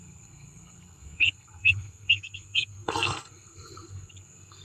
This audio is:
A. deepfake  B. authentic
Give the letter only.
A